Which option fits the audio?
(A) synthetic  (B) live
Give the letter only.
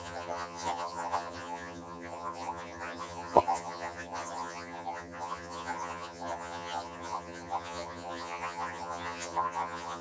A